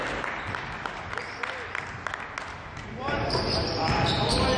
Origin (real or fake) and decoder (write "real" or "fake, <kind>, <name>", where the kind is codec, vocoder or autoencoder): real